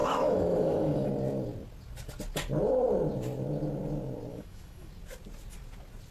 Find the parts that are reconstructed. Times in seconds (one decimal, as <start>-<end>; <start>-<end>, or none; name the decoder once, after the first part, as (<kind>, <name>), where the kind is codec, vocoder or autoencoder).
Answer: 0.0-1.1 (autoencoder, DAC-VAE); 4.3-4.9

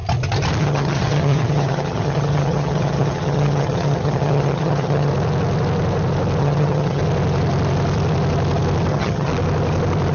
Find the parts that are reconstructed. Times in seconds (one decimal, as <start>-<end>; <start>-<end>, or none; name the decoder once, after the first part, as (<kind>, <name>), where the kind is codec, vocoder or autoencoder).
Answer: 0.6-5.1 (vocoder, HiFi-GAN); 6.4-7.0; 8.9-9.3

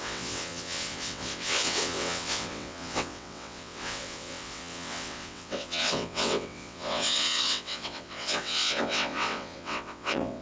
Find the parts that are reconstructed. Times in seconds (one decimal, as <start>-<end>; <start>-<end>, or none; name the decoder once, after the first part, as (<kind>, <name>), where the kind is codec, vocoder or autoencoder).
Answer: 0.0-10.4 (vocoder, WaveNeXt)

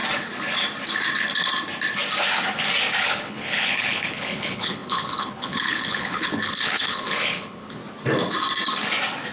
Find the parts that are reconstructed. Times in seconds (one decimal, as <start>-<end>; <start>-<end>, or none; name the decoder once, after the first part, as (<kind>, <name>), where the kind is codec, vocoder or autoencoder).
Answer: 3.0-7.8 (codec, HILCodec)